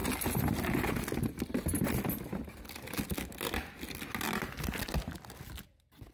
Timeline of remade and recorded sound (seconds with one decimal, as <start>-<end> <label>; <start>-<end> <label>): 0.0-6.1 recorded